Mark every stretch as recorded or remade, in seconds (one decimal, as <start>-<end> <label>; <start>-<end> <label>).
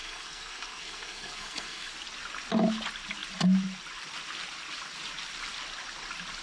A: 0.0-1.9 remade; 1.9-6.4 recorded